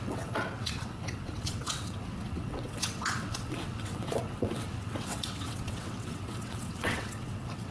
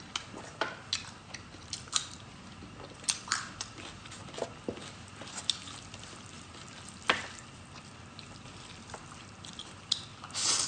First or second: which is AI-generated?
first